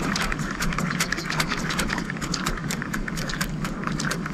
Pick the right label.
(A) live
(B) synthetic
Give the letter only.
B